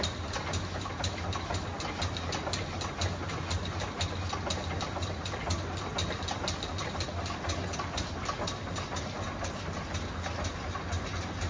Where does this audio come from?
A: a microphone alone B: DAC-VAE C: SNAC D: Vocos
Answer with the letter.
A